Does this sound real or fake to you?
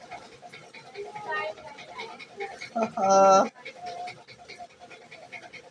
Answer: real